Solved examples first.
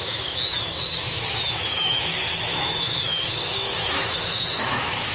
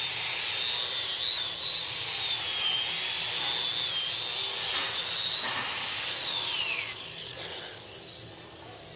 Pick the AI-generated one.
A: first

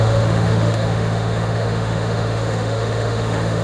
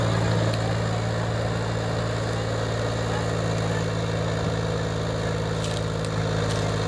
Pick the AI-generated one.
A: first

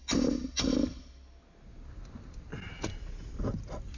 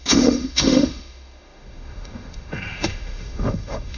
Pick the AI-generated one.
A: second